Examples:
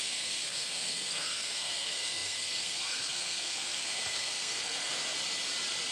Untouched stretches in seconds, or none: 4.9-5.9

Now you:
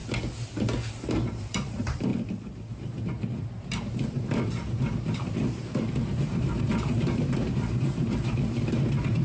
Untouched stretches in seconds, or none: 0.0-0.9; 2.1-2.7